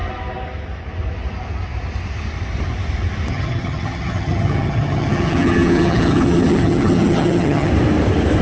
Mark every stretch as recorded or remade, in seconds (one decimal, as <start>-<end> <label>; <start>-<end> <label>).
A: 0.0-3.3 recorded; 3.3-7.7 remade; 7.7-8.4 recorded